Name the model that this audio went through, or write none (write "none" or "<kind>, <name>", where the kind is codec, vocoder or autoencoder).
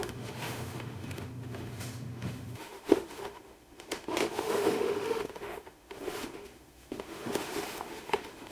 autoencoder, DAC-VAE